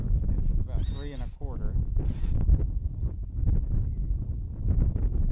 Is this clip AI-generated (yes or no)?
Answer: no